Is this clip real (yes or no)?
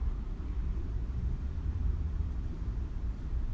no